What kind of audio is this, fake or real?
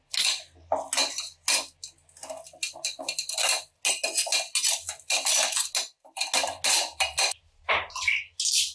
real